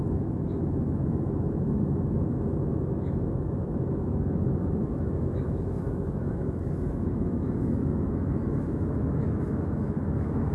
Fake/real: fake